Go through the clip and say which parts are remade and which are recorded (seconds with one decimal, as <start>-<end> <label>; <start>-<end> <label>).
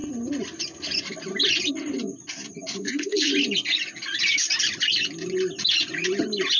0.0-2.7 recorded; 2.7-3.3 remade; 3.3-6.6 recorded